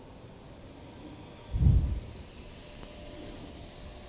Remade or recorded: recorded